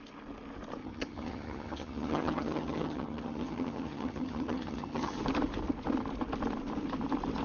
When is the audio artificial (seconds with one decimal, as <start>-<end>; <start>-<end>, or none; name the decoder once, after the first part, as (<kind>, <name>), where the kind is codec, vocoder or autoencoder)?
0.8-5.2 (vocoder, HiFi-GAN)